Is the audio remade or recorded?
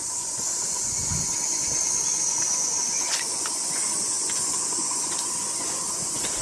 remade